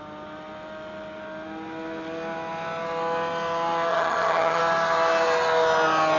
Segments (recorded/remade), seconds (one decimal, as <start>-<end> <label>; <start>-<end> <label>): 0.0-3.9 recorded; 3.9-4.6 remade; 4.6-6.2 recorded